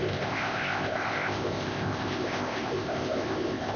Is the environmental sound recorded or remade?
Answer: remade